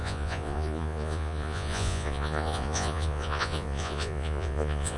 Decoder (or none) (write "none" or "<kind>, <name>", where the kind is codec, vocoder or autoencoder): vocoder, Vocos